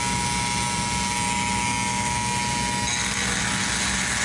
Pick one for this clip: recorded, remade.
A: recorded